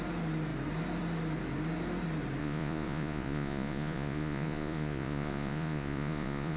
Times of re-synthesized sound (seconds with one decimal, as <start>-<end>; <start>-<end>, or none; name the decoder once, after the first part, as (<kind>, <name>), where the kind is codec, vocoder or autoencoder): 2.4-6.6 (vocoder, Vocos)